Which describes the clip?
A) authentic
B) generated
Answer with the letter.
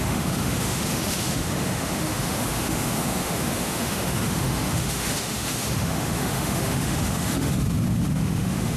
B